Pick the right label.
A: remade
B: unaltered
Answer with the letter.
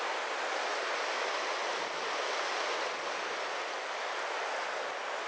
B